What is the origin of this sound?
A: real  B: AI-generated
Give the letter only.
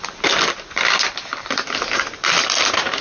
A